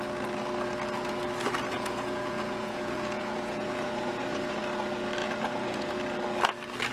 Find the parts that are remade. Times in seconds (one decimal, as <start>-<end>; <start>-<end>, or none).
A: 1.7-4.6; 5.2-6.0